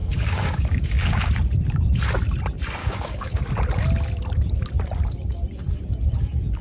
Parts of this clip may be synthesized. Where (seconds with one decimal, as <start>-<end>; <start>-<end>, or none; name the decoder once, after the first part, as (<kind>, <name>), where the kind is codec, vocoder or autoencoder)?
0.0-1.3 (codec, DAC); 2.8-3.4